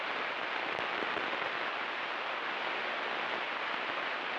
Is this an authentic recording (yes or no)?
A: yes